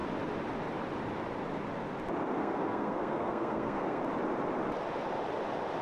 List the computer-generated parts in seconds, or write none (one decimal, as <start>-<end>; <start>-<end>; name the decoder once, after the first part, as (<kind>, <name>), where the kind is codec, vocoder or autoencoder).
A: 2.4-4.0 (codec, SNAC)